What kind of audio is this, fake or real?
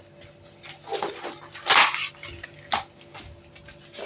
real